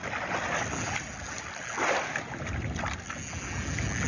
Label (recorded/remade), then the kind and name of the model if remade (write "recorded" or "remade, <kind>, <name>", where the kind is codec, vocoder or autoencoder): recorded